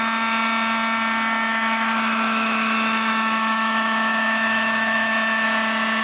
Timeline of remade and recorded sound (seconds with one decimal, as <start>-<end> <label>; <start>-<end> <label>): 0.0-1.5 recorded; 1.5-5.1 remade; 5.1-6.0 recorded